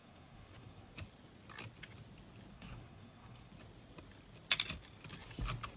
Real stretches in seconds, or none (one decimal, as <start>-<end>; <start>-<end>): 0.9-2.5; 3.5-5.8